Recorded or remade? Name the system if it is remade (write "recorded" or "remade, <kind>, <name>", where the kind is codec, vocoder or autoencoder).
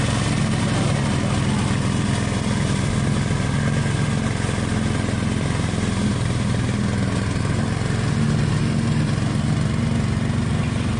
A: recorded